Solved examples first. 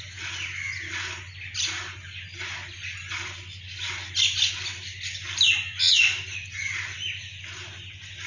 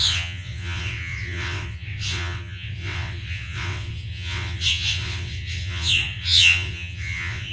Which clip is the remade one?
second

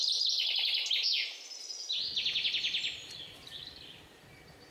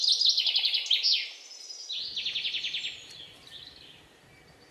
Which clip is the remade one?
first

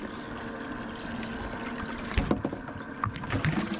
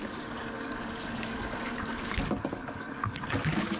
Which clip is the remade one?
second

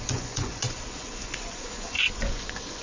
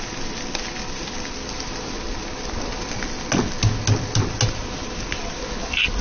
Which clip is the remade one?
first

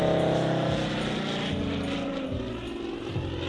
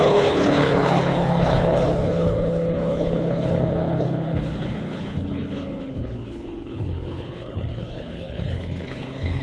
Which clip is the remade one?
second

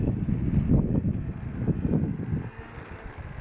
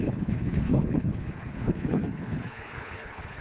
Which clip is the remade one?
second